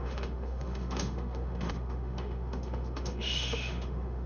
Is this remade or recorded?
remade